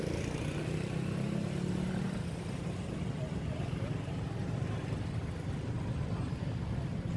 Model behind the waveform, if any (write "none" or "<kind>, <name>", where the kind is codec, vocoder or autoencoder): none